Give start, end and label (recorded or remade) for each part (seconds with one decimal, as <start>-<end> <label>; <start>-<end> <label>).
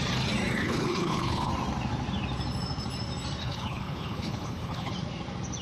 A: 0.0-0.6 recorded; 0.6-1.5 remade; 1.5-3.4 recorded; 3.4-4.9 remade; 4.9-5.6 recorded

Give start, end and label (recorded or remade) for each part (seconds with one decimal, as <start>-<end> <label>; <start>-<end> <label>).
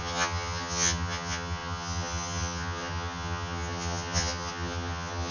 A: 0.0-5.3 remade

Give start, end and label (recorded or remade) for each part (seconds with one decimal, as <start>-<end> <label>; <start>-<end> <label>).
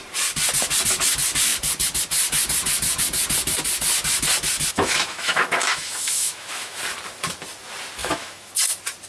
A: 0.0-4.7 recorded; 4.7-6.8 remade; 6.8-8.0 recorded; 8.0-8.5 remade; 8.5-9.1 recorded